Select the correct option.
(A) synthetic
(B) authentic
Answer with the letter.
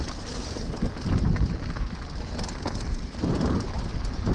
B